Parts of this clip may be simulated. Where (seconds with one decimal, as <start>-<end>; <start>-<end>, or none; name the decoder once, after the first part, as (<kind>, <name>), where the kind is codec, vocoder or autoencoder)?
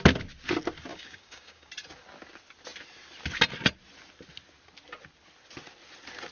0.9-1.7 (codec, DAC)